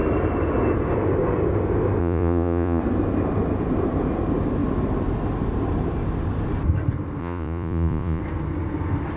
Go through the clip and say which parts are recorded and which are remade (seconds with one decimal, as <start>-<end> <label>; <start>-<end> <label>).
0.0-2.0 recorded; 2.0-2.8 remade; 2.8-7.2 recorded; 7.2-8.2 remade; 8.2-9.2 recorded